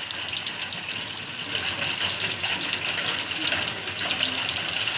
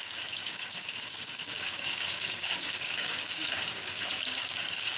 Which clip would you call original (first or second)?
first